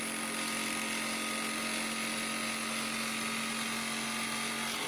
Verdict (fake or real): real